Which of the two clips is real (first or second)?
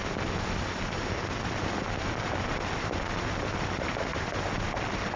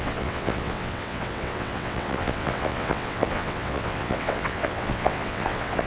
first